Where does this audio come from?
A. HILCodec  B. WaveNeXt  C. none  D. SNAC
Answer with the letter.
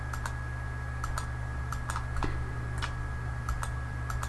C